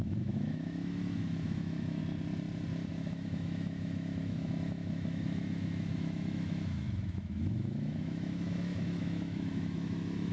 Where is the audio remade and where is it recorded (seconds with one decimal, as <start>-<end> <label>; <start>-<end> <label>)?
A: 0.0-2.0 remade; 2.0-2.9 recorded; 2.9-10.3 remade